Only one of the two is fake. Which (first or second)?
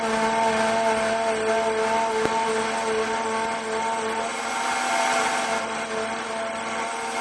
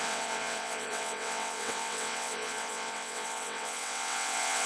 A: second